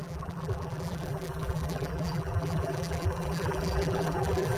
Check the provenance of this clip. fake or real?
fake